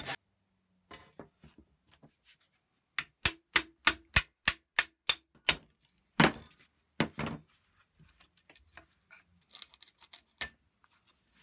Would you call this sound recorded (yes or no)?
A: yes